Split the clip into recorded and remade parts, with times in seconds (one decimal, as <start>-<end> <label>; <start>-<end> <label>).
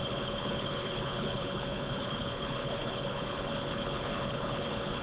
0.0-5.0 remade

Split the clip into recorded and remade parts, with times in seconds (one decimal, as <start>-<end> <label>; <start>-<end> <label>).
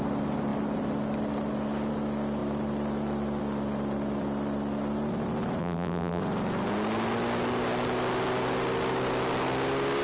0.0-5.6 recorded; 5.6-6.2 remade; 6.2-10.0 recorded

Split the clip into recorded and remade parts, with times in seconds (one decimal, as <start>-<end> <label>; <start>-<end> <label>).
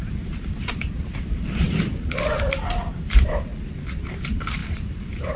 0.0-1.9 remade; 1.9-2.7 recorded; 2.7-3.5 remade; 3.5-4.0 recorded; 4.0-5.4 remade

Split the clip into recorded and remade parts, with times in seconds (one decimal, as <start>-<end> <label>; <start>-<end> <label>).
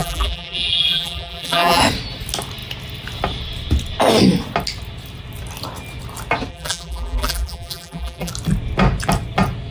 0.0-1.8 remade; 1.8-6.5 recorded; 6.5-8.3 remade; 8.3-9.7 recorded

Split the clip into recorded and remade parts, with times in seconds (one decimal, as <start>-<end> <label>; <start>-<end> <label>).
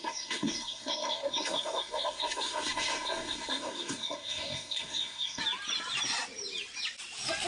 0.0-5.4 remade; 5.4-7.5 recorded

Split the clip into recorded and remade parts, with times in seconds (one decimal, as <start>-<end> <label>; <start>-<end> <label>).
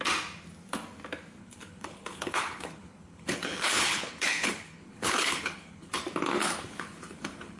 0.0-1.4 recorded; 1.4-6.0 remade; 6.0-6.4 recorded; 6.4-7.6 remade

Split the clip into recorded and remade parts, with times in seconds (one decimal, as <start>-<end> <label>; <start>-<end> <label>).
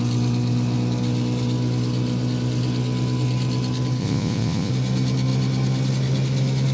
0.0-4.0 recorded; 4.0-4.7 remade; 4.7-6.7 recorded